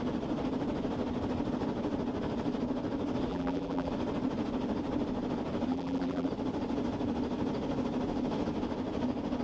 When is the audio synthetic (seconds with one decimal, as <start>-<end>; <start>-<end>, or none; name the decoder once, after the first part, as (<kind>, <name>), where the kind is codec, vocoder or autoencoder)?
3.3-3.9 (vocoder, BigVGAN v2); 5.7-6.3